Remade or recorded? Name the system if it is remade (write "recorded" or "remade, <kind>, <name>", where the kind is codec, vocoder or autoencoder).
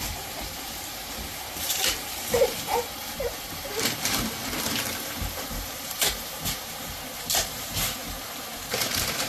remade, vocoder, BigVGAN v2